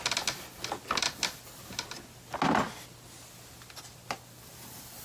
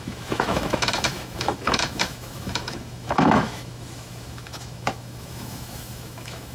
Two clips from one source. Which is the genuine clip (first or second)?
first